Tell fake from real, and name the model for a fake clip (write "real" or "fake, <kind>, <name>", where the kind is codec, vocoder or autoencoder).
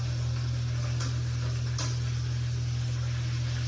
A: real